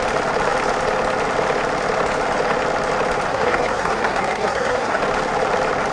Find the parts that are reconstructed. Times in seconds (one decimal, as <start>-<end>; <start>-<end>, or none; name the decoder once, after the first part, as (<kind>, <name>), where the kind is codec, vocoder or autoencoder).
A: 3.3-5.0 (codec, SNAC)